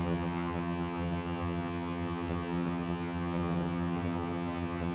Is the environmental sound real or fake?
fake